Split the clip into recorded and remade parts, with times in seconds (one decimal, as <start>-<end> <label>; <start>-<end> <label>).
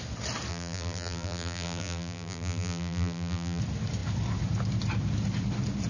0.0-0.5 recorded; 0.5-3.6 remade; 3.6-5.9 recorded